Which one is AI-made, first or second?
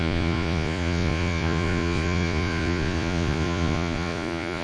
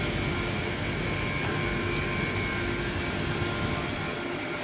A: first